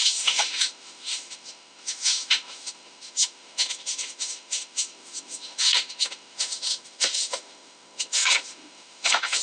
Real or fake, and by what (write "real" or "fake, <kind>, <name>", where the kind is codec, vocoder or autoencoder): fake, autoencoder, DAC-VAE